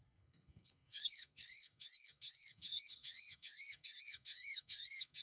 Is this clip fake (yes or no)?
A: yes